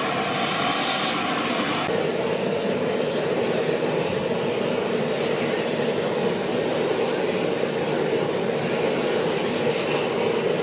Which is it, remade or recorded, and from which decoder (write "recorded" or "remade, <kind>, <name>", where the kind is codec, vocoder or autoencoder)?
recorded